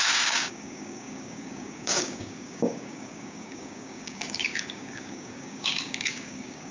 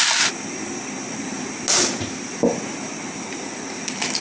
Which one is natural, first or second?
second